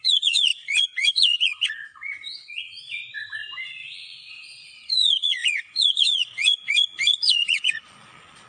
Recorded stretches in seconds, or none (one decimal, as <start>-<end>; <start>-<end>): 3.0-3.6